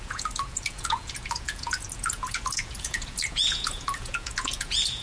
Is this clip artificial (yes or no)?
yes